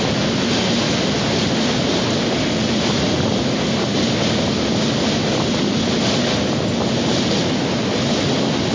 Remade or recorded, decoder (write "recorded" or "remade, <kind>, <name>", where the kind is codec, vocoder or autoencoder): recorded